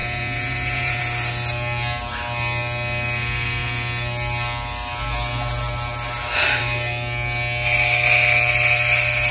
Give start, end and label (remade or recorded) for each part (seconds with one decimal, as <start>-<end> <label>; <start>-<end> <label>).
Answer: 0.0-1.0 remade; 1.0-9.3 recorded